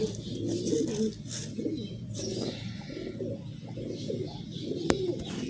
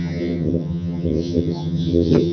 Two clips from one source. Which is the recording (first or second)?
first